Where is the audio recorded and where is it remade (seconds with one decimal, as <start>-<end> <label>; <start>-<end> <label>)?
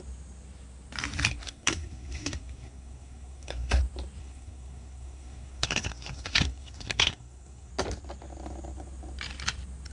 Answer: 0.0-1.4 recorded; 1.4-3.8 remade; 3.8-4.2 recorded; 4.2-7.7 remade; 7.7-9.9 recorded